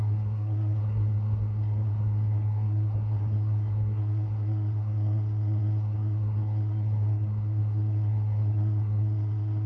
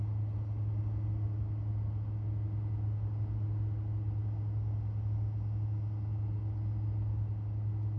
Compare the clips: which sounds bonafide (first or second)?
second